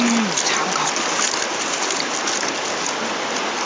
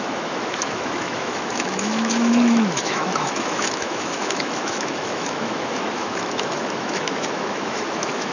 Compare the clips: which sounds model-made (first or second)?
second